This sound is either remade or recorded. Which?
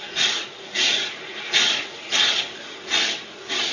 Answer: remade